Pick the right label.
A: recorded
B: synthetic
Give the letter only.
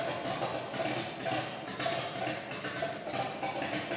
A